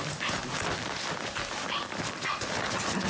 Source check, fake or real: real